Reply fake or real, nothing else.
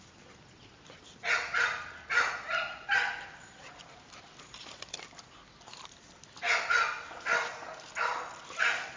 real